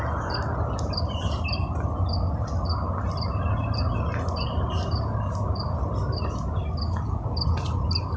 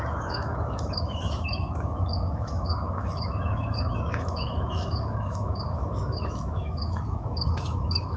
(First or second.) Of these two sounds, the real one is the first